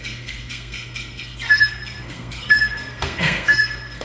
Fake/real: fake